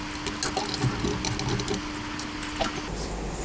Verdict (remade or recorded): recorded